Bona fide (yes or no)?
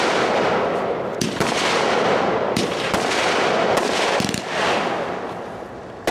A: yes